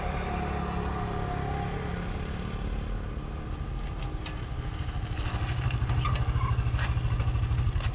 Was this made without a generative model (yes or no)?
yes